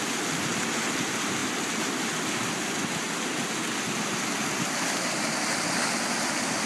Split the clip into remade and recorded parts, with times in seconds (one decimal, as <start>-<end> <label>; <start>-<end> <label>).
0.0-6.7 recorded